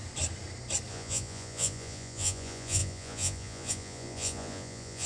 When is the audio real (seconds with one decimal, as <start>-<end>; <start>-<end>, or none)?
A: 0.0-0.9